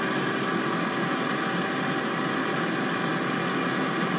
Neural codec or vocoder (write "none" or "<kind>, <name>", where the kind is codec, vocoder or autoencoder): none